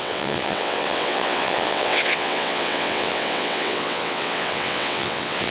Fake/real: fake